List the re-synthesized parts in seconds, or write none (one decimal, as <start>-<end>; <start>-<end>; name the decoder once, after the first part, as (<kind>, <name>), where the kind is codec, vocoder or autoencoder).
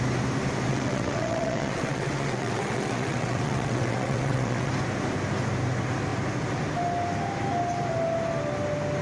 0.7-4.7 (vocoder, WaveNeXt)